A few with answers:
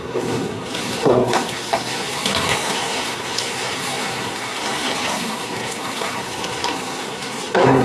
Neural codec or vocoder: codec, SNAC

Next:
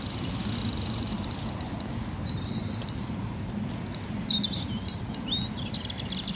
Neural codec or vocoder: none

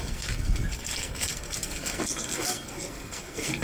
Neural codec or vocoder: codec, SNAC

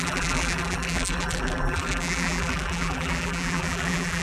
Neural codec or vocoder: vocoder, BigVGAN v2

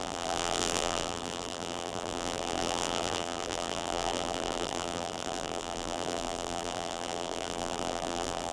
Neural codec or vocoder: vocoder, BigVGAN v2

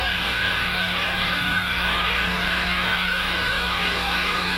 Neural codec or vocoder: codec, DAC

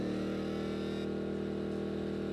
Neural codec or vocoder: none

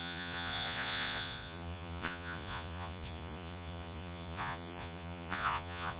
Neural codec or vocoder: vocoder, Vocos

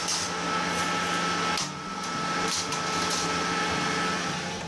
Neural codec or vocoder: none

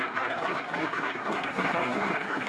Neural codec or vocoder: codec, SNAC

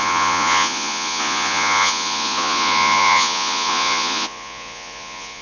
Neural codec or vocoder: vocoder, Vocos